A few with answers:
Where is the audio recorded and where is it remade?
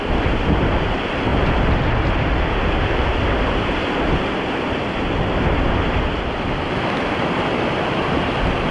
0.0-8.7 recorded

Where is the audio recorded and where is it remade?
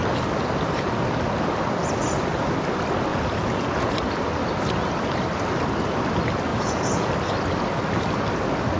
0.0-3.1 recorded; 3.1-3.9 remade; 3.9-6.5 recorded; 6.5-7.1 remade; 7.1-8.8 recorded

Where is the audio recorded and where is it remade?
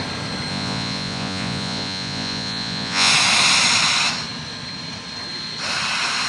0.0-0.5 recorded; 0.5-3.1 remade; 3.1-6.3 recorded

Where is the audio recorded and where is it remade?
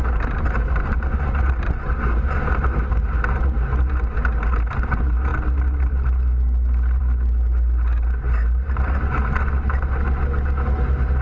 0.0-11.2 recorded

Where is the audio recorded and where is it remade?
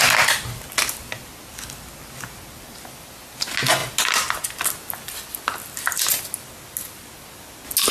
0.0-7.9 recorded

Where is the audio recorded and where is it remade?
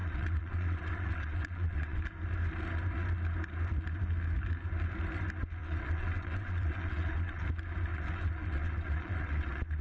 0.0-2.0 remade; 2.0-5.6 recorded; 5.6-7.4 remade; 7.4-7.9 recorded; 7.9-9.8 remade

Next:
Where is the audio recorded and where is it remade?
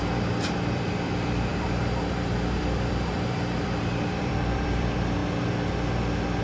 0.0-5.2 remade; 5.2-6.4 recorded